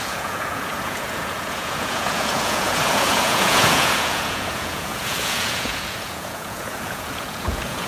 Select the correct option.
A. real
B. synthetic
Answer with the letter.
B